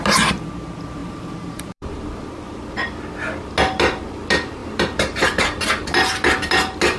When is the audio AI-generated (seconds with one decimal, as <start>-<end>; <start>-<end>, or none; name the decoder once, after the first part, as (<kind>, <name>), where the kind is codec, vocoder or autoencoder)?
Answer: 1.0-2.2 (vocoder, BigVGAN v2)